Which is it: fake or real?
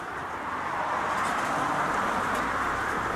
real